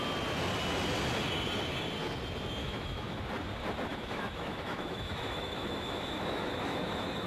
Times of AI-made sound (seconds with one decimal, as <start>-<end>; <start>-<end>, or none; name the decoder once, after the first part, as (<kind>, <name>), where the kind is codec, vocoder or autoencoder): 2.6-3.2 (autoencoder, DAC-VAE); 3.9-7.3